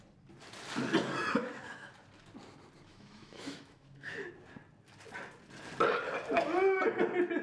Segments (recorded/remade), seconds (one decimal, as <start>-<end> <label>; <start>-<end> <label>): 0.0-1.2 recorded; 1.2-1.9 remade; 1.9-2.9 recorded; 2.9-4.3 remade; 4.3-7.4 recorded